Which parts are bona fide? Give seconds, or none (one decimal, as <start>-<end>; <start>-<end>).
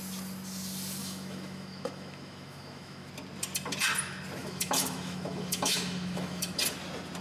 0.0-1.0; 3.1-4.4; 6.6-7.2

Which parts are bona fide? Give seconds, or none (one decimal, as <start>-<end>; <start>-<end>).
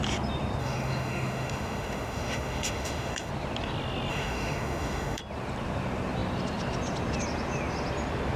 0.0-0.6; 3.3-4.1; 5.2-8.4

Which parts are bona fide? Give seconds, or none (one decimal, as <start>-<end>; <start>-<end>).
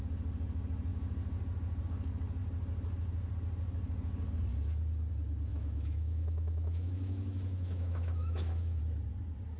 0.0-5.5; 8.8-9.6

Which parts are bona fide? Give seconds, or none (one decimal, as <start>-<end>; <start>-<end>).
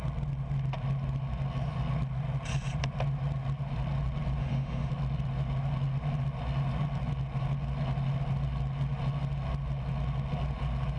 0.0-4.4; 4.9-11.0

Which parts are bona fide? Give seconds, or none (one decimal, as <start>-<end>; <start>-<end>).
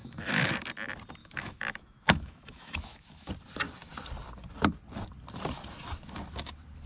0.5-1.2; 3.3-6.9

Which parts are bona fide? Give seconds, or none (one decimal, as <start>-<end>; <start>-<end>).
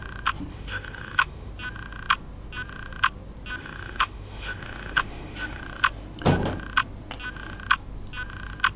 0.0-0.5; 1.5-3.6; 5.6-8.8